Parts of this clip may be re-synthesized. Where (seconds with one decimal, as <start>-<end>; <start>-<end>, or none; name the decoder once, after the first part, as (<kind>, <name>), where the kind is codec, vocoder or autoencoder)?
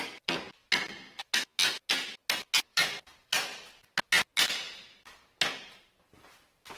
2.7-3.6 (vocoder, BigVGAN v2)